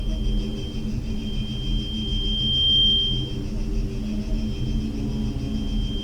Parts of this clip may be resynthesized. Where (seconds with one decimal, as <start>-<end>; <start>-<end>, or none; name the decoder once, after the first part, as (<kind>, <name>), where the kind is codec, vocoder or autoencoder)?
0.5-1.4 (vocoder, BigVGAN v2)